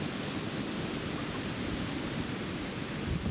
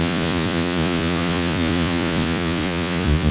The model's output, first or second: second